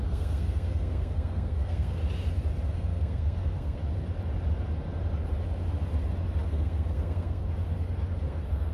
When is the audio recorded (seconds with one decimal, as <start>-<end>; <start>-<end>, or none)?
2.0-2.7; 3.8-6.4; 7.4-8.2